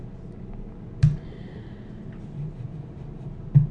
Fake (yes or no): no